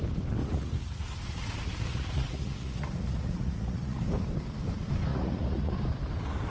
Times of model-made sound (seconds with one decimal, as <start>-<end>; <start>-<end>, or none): 0.4-4.0; 5.1-5.7